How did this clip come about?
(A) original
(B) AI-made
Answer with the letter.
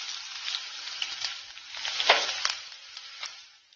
A